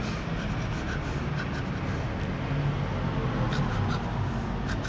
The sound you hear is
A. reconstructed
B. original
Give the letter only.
B